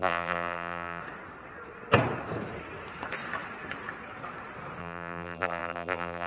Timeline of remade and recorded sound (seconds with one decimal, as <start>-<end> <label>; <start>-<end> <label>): 0.0-1.0 remade; 1.0-4.8 recorded; 4.8-6.3 remade